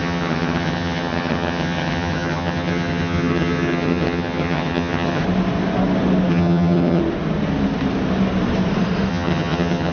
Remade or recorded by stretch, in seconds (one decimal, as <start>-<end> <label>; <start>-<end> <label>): 0.0-5.2 remade; 5.2-6.3 recorded; 6.3-7.0 remade; 7.0-9.1 recorded; 9.1-9.9 remade